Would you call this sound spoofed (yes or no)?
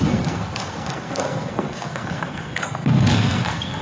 yes